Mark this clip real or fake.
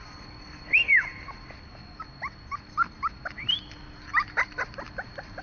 real